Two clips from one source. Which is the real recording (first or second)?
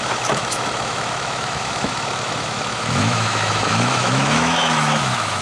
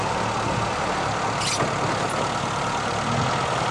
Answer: second